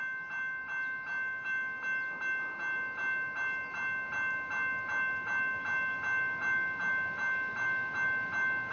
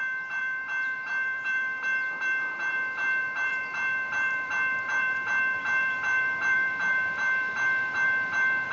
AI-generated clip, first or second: second